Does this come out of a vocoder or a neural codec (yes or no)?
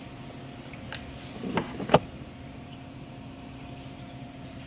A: no